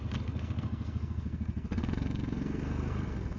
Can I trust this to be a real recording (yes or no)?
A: no